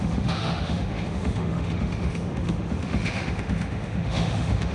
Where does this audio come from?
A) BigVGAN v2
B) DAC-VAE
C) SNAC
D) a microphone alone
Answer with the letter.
B